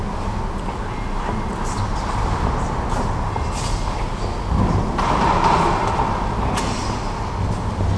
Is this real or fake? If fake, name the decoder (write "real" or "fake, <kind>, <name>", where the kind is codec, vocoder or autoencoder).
real